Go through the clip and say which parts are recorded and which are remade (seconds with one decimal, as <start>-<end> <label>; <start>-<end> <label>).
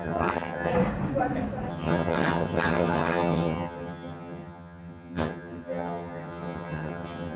0.0-0.7 remade; 0.7-1.7 recorded; 1.7-7.4 remade